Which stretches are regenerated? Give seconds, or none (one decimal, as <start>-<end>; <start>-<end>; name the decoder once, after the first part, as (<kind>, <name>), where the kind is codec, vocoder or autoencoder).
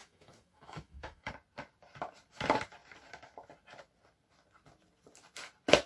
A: 0.0-1.3 (autoencoder, DAC-VAE)